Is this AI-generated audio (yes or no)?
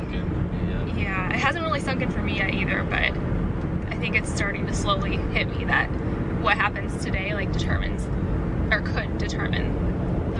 no